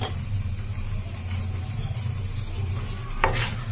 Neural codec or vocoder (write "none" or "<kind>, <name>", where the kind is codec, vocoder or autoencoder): none